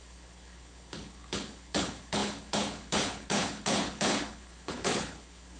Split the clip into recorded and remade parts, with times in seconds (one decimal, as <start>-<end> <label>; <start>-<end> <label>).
0.0-5.6 remade